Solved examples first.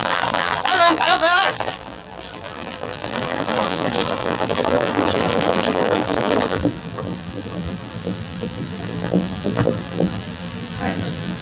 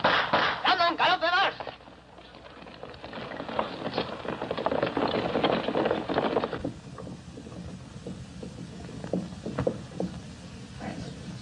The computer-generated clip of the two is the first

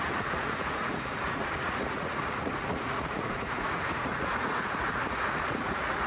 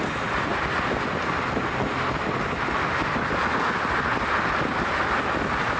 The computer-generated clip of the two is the first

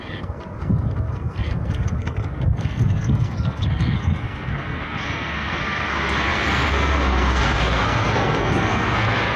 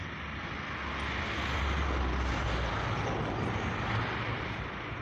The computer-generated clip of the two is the first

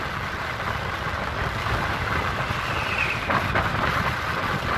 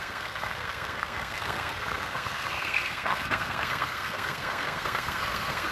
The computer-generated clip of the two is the second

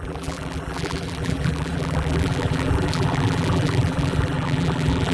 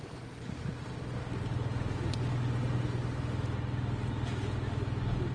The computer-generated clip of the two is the first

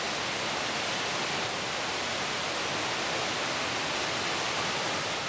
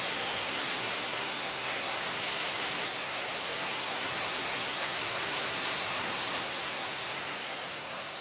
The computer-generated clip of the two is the second